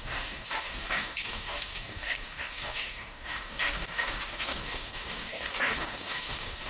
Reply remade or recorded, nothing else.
remade